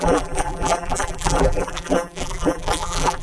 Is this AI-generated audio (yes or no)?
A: yes